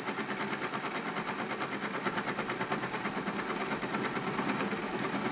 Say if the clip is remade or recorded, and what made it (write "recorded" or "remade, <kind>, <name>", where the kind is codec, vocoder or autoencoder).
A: remade, vocoder, BigVGAN v2